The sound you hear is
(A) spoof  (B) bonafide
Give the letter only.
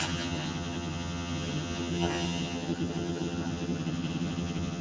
A